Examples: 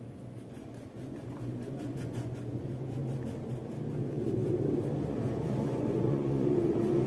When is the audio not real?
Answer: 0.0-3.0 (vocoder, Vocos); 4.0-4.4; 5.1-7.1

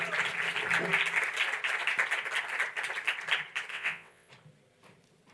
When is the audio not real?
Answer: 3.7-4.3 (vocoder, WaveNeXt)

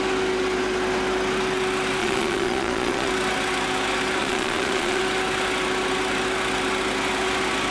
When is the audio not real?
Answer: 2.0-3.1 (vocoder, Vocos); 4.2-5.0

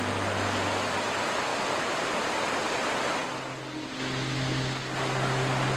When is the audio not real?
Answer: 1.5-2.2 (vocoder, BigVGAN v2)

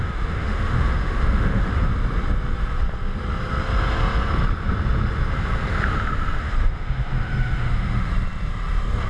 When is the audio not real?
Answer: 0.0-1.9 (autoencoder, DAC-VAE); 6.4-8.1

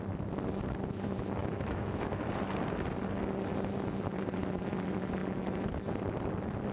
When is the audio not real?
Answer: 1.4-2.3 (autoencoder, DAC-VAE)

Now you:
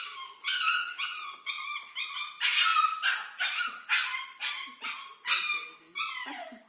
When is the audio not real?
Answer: 0.4-1.6 (vocoder, WaveNeXt)

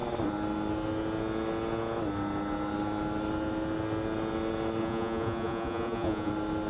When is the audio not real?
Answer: 4.8-6.3 (vocoder, Vocos)